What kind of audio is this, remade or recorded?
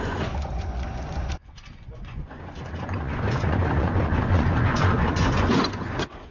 remade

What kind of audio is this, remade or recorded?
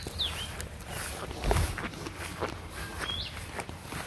recorded